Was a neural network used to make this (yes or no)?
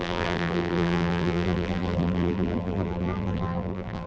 yes